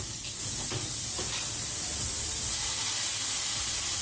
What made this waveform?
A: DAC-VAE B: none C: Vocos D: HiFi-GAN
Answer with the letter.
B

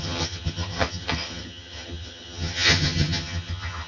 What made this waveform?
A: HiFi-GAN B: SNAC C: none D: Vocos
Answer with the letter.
A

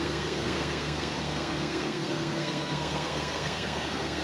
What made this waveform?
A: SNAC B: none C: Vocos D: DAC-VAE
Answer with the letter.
A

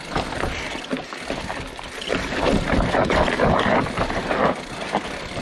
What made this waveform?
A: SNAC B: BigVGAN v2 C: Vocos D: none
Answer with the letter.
D